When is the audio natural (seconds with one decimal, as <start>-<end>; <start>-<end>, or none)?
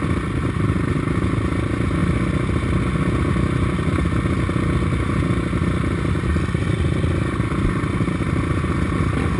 0.0-9.4